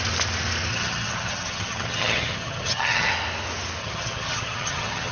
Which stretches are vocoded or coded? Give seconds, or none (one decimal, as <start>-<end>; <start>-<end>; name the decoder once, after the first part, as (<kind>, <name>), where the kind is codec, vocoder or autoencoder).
0.7-3.1 (vocoder, HiFi-GAN); 3.8-5.1